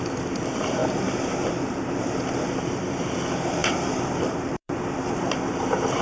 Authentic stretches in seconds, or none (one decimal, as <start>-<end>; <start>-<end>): 0.8-2.0